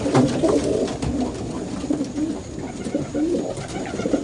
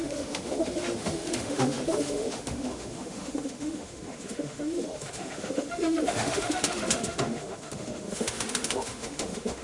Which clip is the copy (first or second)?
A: second